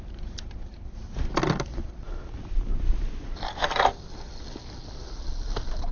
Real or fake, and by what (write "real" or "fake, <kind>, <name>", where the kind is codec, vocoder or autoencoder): real